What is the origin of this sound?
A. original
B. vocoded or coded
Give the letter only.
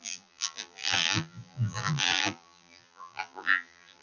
B